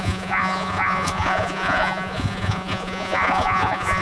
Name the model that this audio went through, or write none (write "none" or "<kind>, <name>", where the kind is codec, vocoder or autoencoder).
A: vocoder, Vocos